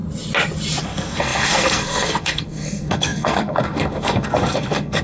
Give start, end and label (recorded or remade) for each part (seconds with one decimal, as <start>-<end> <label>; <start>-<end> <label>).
0.0-0.8 recorded; 0.8-5.0 remade